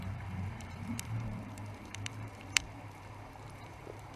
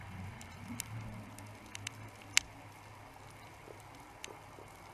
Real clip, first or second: second